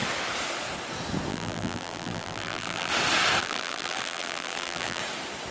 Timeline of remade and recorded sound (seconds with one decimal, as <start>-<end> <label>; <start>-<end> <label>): 0.0-1.3 recorded; 1.3-2.9 remade; 2.9-3.4 recorded; 3.4-5.0 remade; 5.0-5.5 recorded